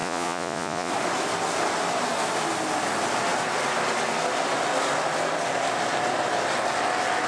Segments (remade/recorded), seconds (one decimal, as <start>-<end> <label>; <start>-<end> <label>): 0.0-0.9 remade; 0.9-7.3 recorded